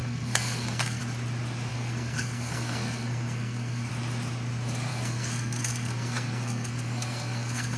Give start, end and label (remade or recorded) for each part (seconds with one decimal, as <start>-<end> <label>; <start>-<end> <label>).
0.0-1.0 remade; 1.0-1.7 recorded; 1.7-3.9 remade; 3.9-4.9 recorded; 4.9-7.8 remade